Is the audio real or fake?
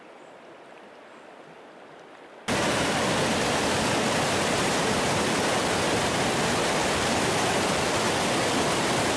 real